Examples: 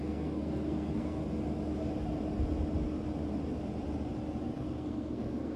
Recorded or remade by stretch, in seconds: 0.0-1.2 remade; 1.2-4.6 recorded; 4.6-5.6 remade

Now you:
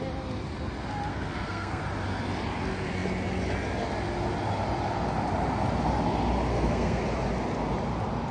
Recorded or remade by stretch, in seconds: 0.0-1.1 recorded; 1.1-1.8 remade; 1.8-6.5 recorded; 6.5-7.0 remade; 7.0-8.3 recorded

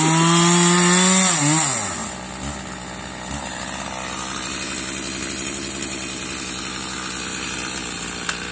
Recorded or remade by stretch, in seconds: 0.0-8.5 recorded

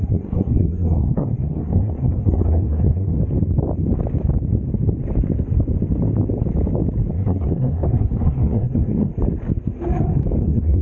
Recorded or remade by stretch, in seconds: 0.0-3.2 remade; 3.2-7.1 recorded; 7.1-9.1 remade; 9.1-10.4 recorded; 10.4-10.8 remade

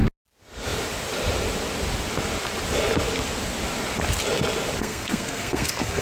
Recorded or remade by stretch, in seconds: 0.0-4.8 recorded; 4.8-6.0 remade

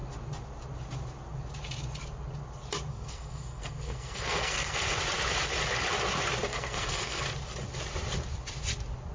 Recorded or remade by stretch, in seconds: 0.0-2.9 recorded; 2.9-5.0 remade; 5.0-6.5 recorded; 6.5-7.2 remade; 7.2-9.1 recorded